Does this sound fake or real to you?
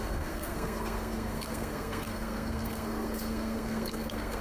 fake